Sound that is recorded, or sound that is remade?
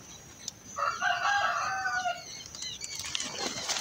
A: recorded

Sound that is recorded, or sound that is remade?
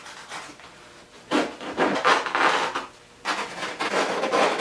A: recorded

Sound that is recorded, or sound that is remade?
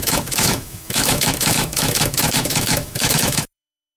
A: remade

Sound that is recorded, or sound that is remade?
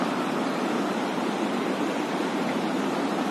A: recorded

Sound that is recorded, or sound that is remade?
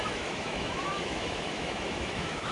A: remade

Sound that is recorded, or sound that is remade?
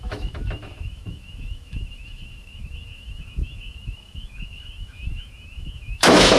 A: remade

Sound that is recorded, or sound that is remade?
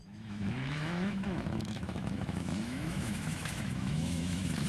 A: remade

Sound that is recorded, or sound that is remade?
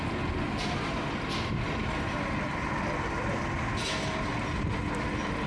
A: recorded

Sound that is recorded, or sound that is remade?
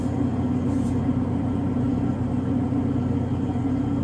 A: recorded